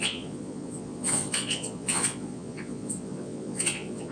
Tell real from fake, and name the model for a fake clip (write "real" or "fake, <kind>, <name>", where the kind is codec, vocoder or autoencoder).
fake, vocoder, Vocos